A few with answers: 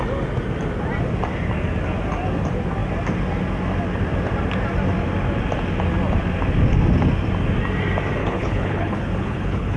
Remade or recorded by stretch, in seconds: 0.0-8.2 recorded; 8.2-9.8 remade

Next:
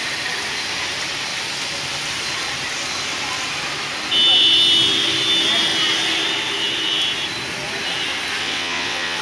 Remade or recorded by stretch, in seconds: 0.0-8.4 recorded; 8.4-9.2 remade

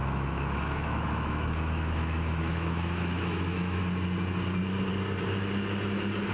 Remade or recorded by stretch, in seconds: 0.0-3.8 remade; 3.8-6.3 recorded

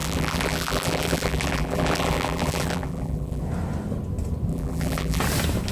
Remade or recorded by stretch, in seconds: 0.0-3.4 remade; 3.4-4.5 recorded; 4.5-5.2 remade; 5.2-5.7 recorded